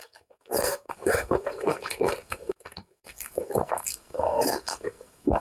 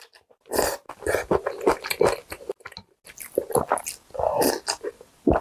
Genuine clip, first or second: second